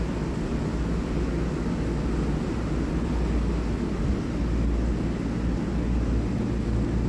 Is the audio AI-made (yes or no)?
no